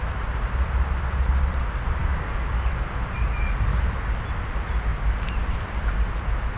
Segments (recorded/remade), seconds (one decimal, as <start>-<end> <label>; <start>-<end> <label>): 0.0-2.0 recorded; 2.0-2.7 remade; 2.7-6.6 recorded